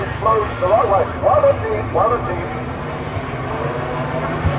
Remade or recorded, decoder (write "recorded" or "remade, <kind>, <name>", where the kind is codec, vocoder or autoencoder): remade, vocoder, BigVGAN v2